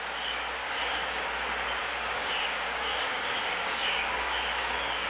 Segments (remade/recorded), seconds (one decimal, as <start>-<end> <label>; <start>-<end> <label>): 0.0-0.6 recorded; 0.6-1.3 remade; 1.3-1.8 recorded; 1.8-5.1 remade